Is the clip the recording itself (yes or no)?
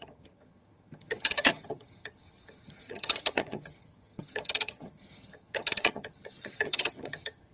no